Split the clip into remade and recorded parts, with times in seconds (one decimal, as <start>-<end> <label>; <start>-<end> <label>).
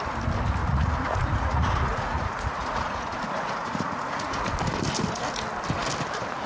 0.0-0.6 recorded; 0.6-4.5 remade; 4.5-6.5 recorded